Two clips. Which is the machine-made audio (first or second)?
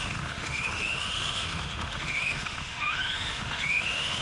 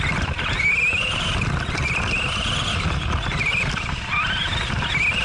first